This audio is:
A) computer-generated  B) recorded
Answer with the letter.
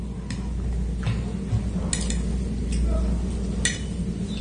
B